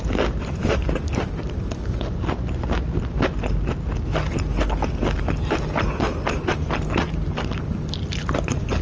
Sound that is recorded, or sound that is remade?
recorded